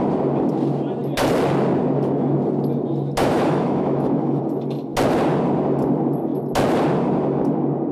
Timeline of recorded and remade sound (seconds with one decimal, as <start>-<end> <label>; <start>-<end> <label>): 0.0-3.2 recorded; 3.2-4.4 remade; 4.4-7.9 recorded